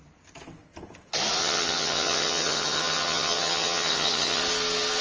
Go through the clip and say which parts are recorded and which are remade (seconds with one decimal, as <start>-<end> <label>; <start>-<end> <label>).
0.0-1.4 recorded; 1.4-4.4 remade; 4.4-5.0 recorded